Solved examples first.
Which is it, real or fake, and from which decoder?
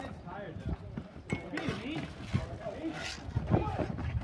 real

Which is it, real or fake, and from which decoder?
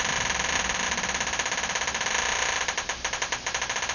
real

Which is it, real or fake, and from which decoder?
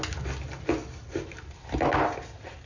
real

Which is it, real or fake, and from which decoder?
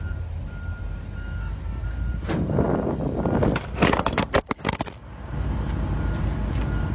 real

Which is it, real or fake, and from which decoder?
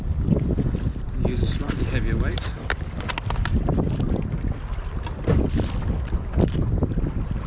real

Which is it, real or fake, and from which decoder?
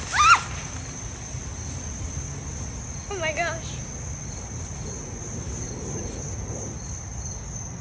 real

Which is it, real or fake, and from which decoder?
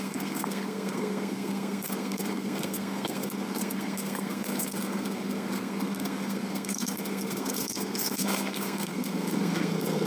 fake, codec, SNAC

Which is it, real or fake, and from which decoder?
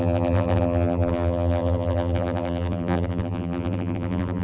fake, vocoder, BigVGAN v2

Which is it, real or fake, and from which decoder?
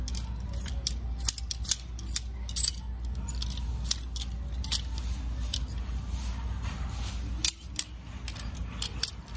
real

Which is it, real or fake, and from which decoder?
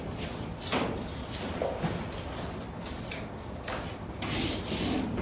real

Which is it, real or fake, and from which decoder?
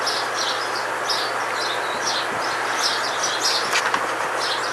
real